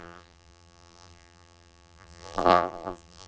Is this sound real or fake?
fake